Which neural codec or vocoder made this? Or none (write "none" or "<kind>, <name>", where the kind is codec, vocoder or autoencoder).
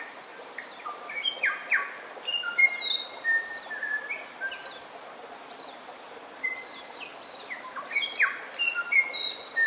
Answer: none